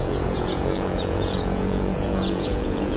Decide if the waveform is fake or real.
fake